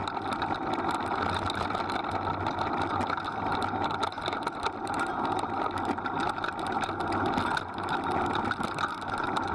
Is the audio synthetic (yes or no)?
no